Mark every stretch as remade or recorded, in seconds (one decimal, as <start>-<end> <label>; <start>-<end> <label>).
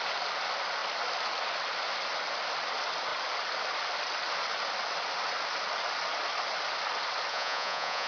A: 0.0-7.3 recorded; 7.3-8.1 remade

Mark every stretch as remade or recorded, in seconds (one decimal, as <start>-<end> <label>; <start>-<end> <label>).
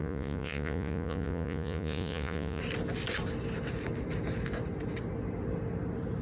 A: 0.0-2.6 remade; 2.6-6.2 recorded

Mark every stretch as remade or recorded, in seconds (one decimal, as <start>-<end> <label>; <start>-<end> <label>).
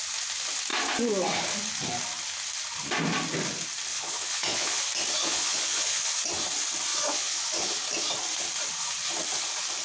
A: 0.0-3.9 recorded; 3.9-4.8 remade; 4.8-5.2 recorded; 5.2-6.1 remade; 6.1-6.9 recorded; 6.9-7.7 remade; 7.7-9.8 recorded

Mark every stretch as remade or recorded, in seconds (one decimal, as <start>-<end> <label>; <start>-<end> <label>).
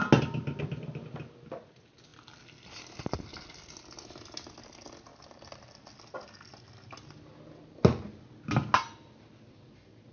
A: 0.0-10.1 recorded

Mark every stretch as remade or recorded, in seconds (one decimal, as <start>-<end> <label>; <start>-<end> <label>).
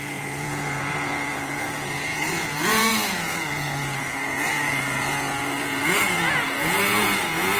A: 0.0-7.6 remade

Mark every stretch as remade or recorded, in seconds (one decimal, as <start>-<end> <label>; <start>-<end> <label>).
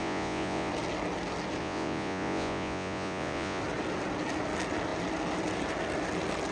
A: 0.0-0.7 remade; 0.7-1.6 recorded; 1.6-3.6 remade; 3.6-6.5 recorded